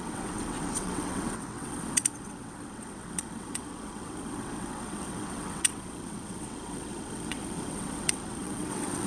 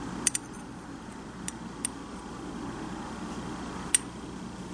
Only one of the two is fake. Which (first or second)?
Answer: first